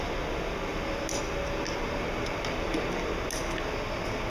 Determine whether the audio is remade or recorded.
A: recorded